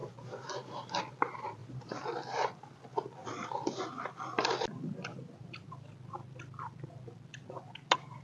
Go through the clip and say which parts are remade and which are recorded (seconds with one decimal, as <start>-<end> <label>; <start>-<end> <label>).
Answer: 0.0-1.0 remade; 1.0-1.6 recorded; 1.6-2.8 remade; 2.8-5.1 recorded; 5.1-5.7 remade; 5.7-8.2 recorded